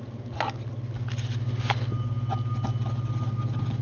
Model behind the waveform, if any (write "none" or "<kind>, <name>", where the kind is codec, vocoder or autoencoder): none